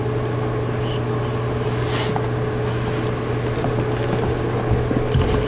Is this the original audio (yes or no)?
yes